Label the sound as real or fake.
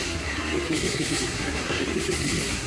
fake